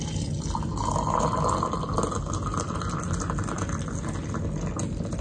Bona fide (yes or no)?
yes